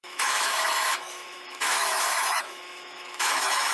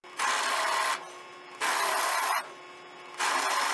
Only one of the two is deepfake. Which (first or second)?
first